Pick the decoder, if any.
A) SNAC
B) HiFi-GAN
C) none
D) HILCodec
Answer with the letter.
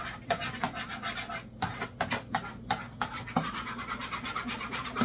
C